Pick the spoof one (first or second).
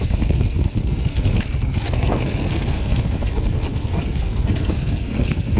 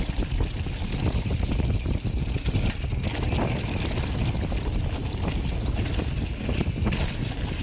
first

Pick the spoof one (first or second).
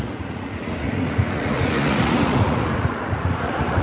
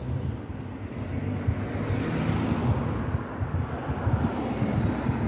first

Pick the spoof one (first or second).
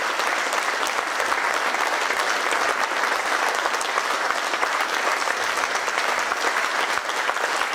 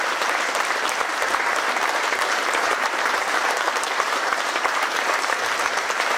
second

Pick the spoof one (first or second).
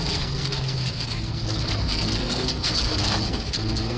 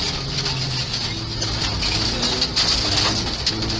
first